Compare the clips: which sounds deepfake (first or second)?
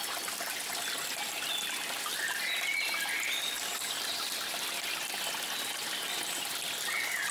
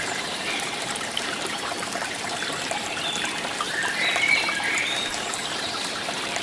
second